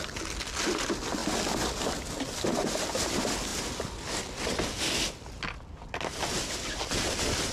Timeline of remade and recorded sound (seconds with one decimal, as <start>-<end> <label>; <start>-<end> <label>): 0.0-7.5 recorded